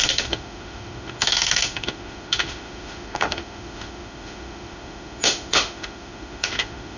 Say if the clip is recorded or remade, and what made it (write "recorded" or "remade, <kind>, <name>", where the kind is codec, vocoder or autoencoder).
remade, autoencoder, DAC-VAE